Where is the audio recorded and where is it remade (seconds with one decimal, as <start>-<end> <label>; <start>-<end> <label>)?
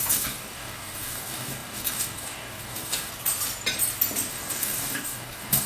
0.0-3.1 remade; 3.1-4.3 recorded; 4.3-5.7 remade